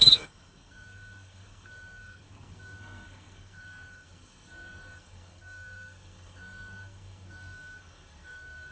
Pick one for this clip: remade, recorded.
remade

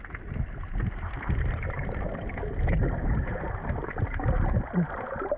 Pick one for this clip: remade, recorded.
recorded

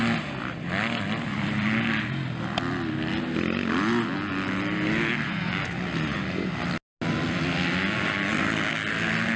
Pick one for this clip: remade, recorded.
recorded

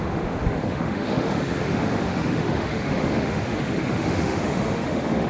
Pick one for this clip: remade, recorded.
remade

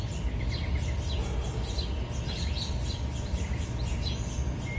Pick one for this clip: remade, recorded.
recorded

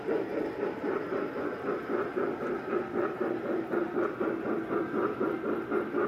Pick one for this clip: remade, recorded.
recorded